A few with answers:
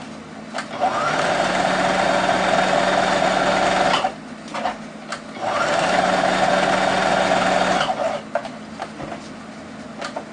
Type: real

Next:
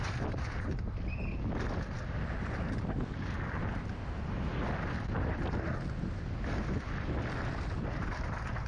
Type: real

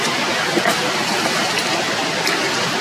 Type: real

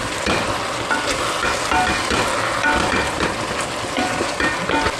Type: real